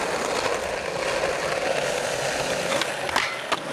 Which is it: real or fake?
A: real